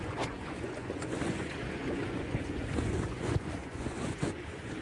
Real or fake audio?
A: fake